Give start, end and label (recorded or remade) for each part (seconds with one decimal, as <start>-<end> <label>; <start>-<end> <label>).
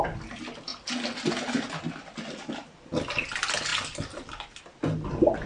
0.0-5.5 recorded